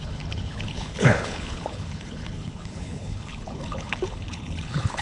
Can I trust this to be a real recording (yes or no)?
no